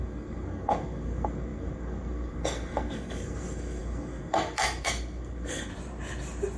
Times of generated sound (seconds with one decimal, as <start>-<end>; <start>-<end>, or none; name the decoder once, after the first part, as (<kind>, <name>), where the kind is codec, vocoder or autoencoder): 0.0-5.7 (codec, SNAC)